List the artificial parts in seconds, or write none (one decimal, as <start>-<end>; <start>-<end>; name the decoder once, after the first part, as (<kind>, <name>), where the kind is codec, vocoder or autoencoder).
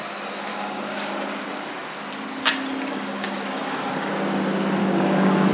0.5-1.1 (codec, DAC); 2.9-4.1; 4.8-5.5